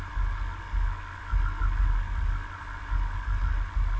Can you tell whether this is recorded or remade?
recorded